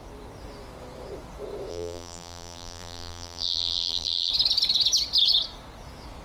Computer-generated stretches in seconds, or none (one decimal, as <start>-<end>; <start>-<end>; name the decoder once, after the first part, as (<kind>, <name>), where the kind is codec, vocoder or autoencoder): 1.7-4.3 (vocoder, BigVGAN v2)